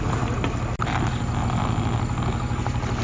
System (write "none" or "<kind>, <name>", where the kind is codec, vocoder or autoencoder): none